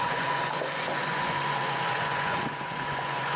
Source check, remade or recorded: remade